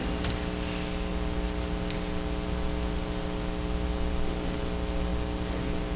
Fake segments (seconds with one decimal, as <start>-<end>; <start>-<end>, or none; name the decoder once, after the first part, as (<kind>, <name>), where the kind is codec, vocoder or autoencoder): none